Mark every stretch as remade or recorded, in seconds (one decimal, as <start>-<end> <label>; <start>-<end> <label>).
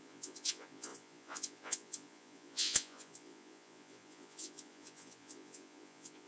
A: 0.0-6.3 remade